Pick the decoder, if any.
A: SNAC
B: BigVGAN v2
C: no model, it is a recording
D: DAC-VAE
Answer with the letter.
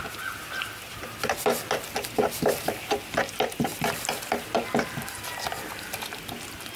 C